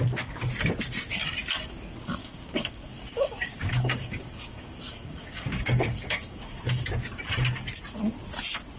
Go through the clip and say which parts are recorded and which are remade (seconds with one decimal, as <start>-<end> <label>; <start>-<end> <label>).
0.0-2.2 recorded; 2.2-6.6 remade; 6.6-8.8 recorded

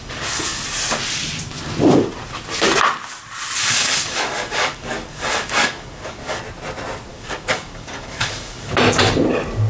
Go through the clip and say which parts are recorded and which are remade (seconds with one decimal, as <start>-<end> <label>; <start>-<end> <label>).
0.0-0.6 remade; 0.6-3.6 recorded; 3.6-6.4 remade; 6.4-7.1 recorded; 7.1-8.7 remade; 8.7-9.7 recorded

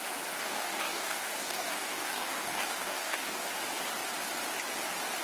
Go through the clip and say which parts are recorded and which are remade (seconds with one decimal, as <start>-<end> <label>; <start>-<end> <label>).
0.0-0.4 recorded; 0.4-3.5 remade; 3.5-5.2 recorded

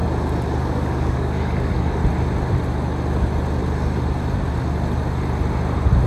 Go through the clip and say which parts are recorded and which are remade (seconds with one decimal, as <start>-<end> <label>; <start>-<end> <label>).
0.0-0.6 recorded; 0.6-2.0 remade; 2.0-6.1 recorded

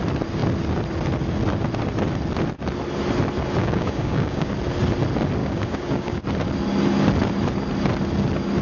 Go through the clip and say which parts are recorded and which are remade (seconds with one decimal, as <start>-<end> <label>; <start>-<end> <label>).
0.0-3.6 recorded; 3.6-4.5 remade; 4.5-5.4 recorded; 5.4-6.2 remade; 6.2-8.6 recorded

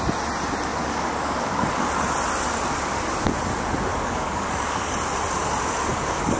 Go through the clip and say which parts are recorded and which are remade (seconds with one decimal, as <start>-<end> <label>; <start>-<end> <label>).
0.0-0.7 recorded; 0.7-1.8 remade; 1.8-3.9 recorded; 3.9-4.9 remade; 4.9-5.9 recorded; 5.9-6.4 remade

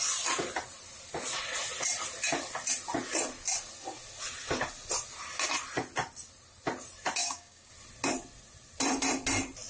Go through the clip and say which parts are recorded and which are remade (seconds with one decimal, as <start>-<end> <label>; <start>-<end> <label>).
0.0-7.2 recorded; 7.2-7.7 remade; 7.7-9.7 recorded

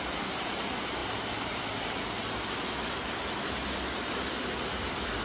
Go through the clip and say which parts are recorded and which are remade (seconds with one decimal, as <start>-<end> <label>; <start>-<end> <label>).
0.0-5.2 recorded